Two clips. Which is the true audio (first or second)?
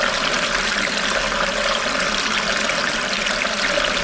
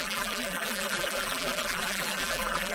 first